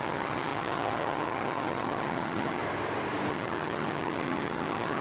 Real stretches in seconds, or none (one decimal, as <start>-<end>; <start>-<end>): 2.6-3.3